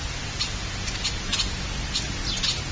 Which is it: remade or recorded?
recorded